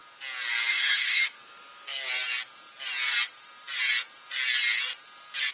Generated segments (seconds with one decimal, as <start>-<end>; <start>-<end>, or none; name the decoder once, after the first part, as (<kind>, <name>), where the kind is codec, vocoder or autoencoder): 0.7-1.9 (autoencoder, DAC-VAE)